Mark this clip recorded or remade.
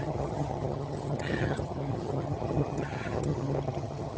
remade